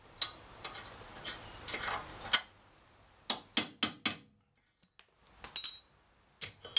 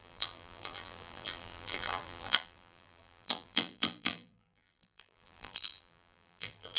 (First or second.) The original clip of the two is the first